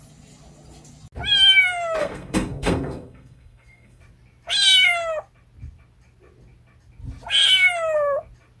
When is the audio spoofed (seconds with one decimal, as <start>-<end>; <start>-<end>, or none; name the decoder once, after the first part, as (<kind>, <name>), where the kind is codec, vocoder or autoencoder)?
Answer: 2.0-4.0 (codec, SNAC)

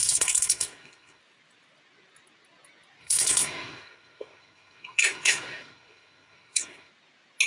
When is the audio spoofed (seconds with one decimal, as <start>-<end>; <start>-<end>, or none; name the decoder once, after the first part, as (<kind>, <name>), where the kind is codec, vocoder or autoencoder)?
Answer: 0.0-1.2 (codec, SNAC); 3.0-6.9

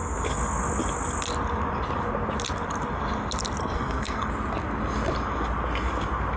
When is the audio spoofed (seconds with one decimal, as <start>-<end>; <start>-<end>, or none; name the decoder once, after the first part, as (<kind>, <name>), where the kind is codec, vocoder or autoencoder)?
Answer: 3.6-4.3 (codec, SNAC)

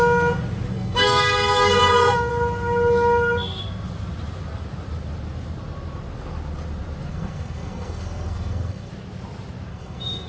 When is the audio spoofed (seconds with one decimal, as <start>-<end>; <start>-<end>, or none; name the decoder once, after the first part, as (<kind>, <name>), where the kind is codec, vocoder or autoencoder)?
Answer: 0.7-2.3 (codec, SNAC); 7.1-8.9; 9.7-10.3

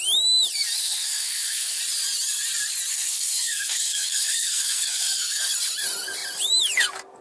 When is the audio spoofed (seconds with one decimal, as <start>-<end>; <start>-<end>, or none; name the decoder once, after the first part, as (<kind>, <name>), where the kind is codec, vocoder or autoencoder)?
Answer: 0.8-1.8 (codec, SNAC); 2.9-5.5